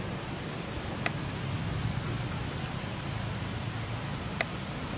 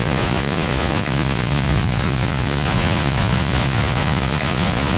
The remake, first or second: second